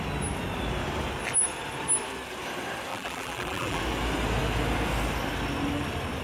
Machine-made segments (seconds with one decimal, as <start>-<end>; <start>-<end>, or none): 2.9-3.8

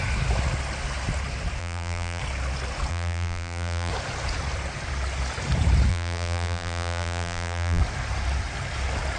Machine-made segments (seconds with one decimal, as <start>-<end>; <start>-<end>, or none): 1.6-2.2; 2.9-3.9; 5.9-7.8

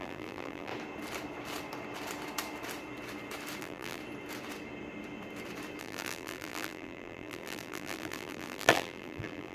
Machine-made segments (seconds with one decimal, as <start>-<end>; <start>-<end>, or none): 0.0-0.7; 3.6-4.0; 5.8-9.5

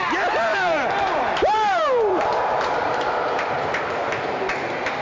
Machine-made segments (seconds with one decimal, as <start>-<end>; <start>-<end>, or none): 0.5-3.5; 4.0-4.6

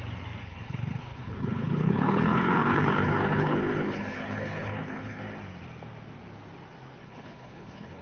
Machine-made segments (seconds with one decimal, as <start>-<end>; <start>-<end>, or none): 0.4-5.2; 7.0-8.0